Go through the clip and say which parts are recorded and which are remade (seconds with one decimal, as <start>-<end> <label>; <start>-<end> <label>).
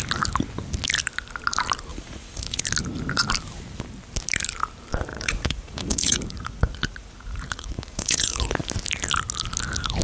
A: 0.0-1.9 recorded; 1.9-2.6 remade; 2.6-5.1 recorded; 5.1-8.5 remade; 8.5-10.0 recorded